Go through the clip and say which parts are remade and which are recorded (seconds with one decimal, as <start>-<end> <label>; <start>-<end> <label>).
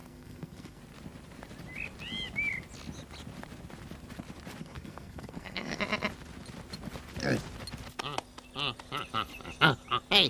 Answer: 0.0-0.8 remade; 0.8-4.6 recorded; 4.6-5.8 remade; 5.8-10.3 recorded